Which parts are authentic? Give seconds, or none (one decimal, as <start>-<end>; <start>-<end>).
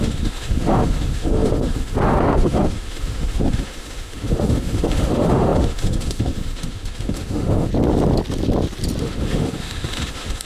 7.7-9.0